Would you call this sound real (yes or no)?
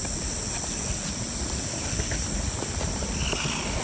yes